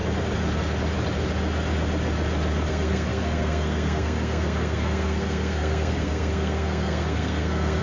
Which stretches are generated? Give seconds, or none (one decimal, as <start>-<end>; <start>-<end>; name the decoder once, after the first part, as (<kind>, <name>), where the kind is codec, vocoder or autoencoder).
2.7-7.8 (codec, SNAC)